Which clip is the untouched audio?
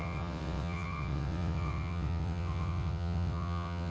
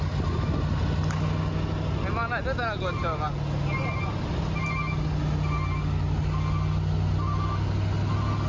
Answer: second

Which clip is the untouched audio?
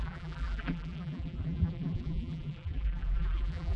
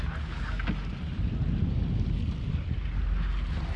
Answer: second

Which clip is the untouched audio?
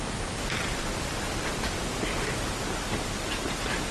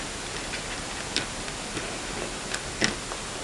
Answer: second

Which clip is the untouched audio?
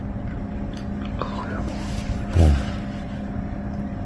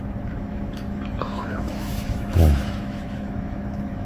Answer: first